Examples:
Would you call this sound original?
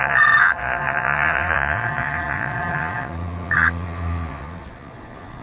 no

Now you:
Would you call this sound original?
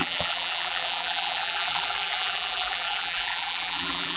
no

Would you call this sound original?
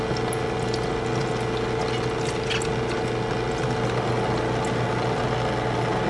yes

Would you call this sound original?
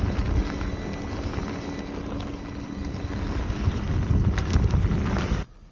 yes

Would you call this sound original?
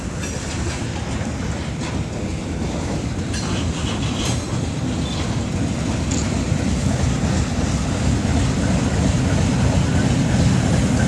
yes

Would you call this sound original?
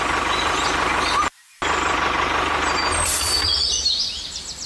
yes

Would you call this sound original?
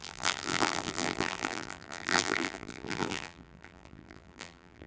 no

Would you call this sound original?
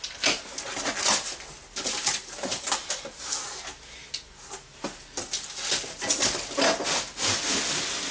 yes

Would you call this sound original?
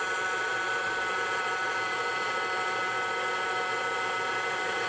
no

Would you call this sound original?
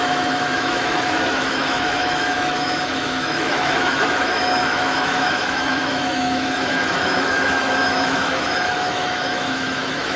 no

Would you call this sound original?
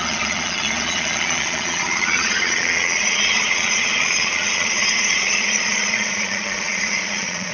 no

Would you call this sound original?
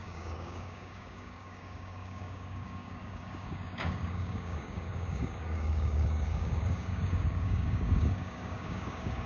no